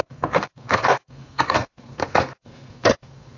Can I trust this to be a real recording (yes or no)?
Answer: no